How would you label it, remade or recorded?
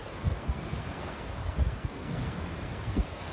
remade